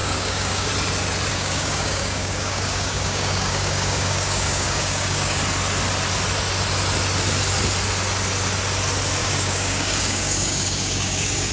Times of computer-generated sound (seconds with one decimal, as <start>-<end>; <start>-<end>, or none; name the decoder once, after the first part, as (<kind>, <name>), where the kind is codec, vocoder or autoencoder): 0.0-0.7 (codec, DAC); 1.3-5.4; 9.2-11.5